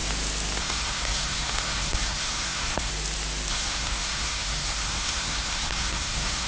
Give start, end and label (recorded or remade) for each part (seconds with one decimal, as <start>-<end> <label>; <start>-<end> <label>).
0.0-0.6 recorded; 0.6-2.9 remade; 2.9-3.5 recorded; 3.5-6.5 remade

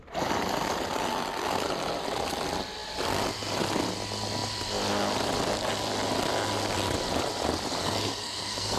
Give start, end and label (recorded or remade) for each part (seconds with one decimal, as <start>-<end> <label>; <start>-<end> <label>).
0.0-7.8 recorded; 7.8-8.8 remade

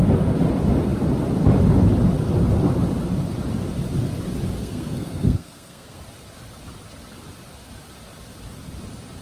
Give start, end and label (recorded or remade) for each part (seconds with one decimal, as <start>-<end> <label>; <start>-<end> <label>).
0.0-4.6 recorded; 4.6-6.0 remade; 6.0-9.2 recorded

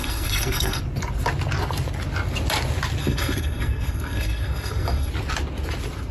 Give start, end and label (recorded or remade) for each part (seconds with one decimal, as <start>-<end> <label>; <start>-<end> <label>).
0.0-0.8 remade; 0.8-3.0 recorded; 3.0-5.1 remade; 5.1-6.1 recorded

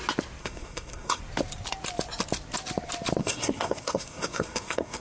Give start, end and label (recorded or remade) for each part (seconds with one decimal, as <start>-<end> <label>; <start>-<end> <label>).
0.0-0.4 recorded; 0.4-1.2 remade; 1.2-3.2 recorded; 3.2-5.0 remade

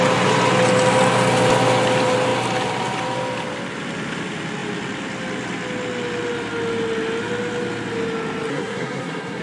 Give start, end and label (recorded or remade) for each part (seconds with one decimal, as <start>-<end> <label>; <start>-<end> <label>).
0.0-8.5 recorded; 8.5-9.4 remade

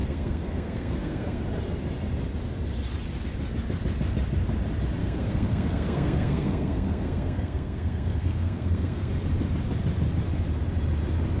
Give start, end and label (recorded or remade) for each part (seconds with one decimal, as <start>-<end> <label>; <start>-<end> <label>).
0.0-1.4 remade; 1.4-5.0 recorded; 5.0-9.1 remade; 9.1-11.4 recorded

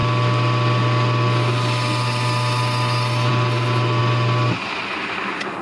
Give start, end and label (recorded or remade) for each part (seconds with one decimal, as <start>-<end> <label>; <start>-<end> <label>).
0.0-5.6 recorded